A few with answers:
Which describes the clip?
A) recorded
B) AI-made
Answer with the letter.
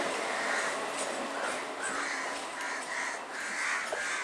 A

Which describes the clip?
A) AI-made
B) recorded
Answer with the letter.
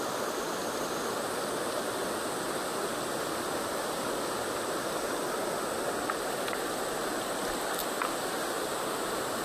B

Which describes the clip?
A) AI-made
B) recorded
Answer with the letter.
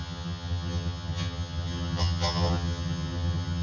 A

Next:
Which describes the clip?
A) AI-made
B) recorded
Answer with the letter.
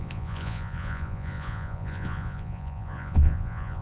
A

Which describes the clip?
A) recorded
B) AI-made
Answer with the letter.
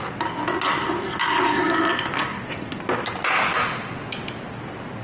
A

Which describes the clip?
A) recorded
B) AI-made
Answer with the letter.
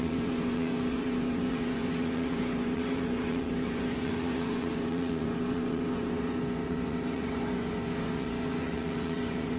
B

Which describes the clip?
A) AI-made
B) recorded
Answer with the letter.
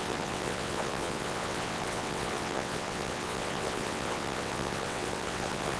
A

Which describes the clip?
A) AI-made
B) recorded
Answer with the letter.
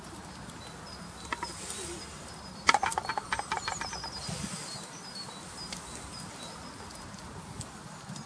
B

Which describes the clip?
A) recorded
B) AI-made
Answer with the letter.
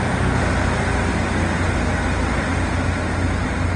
A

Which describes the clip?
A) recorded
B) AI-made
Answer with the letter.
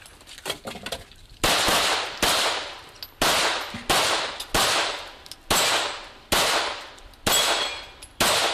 A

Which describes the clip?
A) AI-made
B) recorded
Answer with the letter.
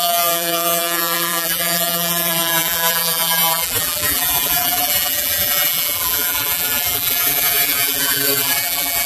A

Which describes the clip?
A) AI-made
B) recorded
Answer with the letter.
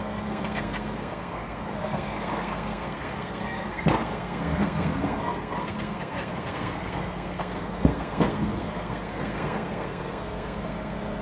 A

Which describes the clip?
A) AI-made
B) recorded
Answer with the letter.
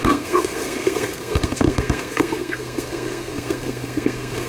A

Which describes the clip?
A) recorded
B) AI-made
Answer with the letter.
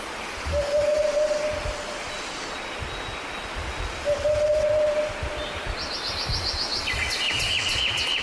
A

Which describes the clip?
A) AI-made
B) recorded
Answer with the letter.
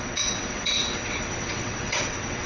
A